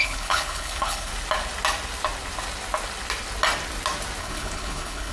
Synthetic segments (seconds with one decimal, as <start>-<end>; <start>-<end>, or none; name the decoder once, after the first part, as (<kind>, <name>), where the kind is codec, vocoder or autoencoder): 0.0-1.1 (codec, HILCodec); 4.2-5.1